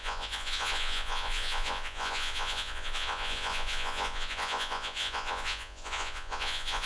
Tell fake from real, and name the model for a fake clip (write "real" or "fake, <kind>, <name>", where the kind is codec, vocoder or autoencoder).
fake, vocoder, Vocos